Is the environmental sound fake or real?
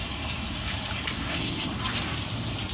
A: real